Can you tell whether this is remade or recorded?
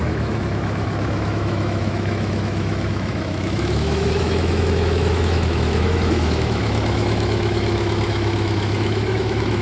remade